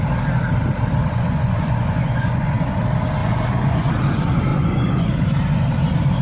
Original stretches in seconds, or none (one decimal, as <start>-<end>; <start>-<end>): 0.0-1.1; 2.8-3.2; 3.9-4.5; 5.1-6.2

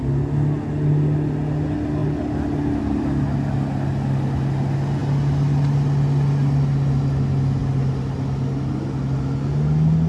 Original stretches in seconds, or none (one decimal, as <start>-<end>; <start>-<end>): 0.0-10.1

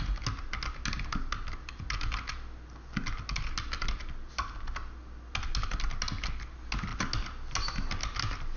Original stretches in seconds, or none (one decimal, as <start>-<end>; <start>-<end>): 0.0-8.6

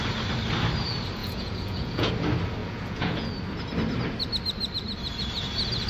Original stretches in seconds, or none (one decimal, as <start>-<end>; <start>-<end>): 0.0-1.2; 2.1-2.6; 3.3-5.9

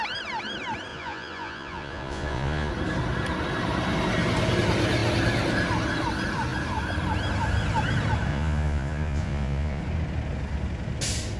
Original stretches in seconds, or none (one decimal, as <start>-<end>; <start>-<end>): 0.0-0.9; 2.7-8.3; 9.8-11.4

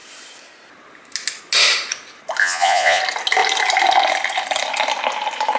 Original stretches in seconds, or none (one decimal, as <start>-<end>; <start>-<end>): 0.0-2.4; 3.0-5.6